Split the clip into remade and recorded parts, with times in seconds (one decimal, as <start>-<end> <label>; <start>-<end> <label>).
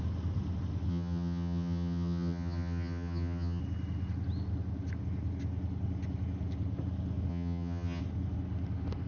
0.0-0.9 recorded; 0.9-3.6 remade; 3.6-7.3 recorded; 7.3-8.0 remade; 8.0-9.1 recorded